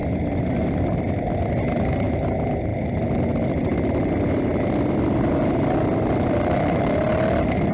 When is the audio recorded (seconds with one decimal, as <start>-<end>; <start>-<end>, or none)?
0.0-7.7